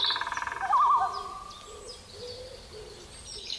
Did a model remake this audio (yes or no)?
no